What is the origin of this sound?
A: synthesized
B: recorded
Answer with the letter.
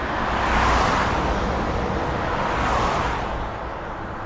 B